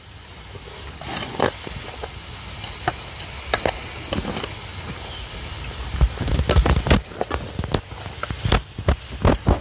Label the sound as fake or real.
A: real